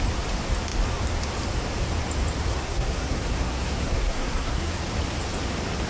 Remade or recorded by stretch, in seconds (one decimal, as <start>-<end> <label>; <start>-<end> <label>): 0.0-2.5 recorded; 2.5-4.8 remade; 4.8-5.9 recorded